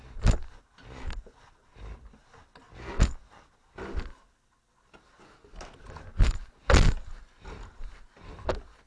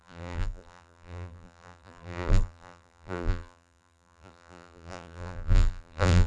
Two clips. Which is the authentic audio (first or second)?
first